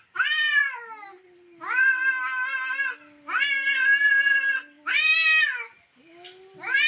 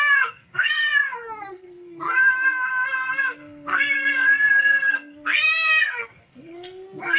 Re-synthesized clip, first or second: second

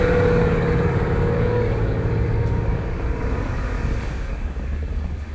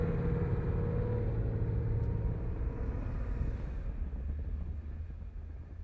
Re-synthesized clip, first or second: first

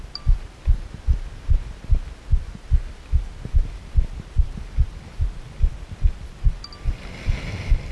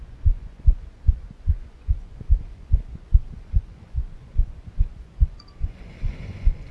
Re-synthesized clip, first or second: second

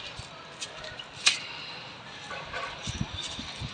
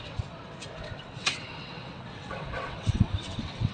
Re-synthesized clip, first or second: second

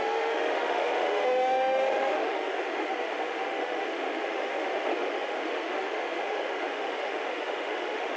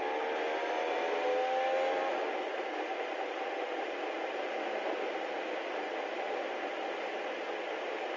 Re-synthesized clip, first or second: first